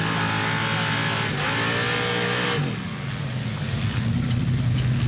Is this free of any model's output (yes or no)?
yes